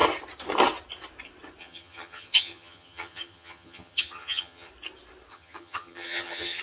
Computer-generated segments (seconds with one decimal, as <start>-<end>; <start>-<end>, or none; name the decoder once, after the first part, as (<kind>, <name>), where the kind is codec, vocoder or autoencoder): 1.6-4.7 (vocoder, HiFi-GAN); 5.3-6.6

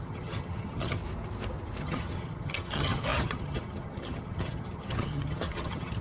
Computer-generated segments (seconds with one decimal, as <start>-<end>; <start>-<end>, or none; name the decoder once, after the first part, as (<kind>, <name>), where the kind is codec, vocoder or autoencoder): 0.0-1.0 (vocoder, HiFi-GAN); 1.8-6.0